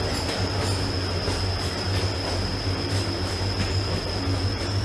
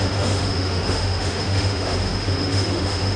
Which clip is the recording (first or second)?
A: first